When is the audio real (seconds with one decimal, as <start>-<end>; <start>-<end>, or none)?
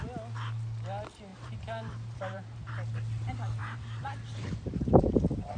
0.0-1.3; 2.7-3.6; 4.5-5.6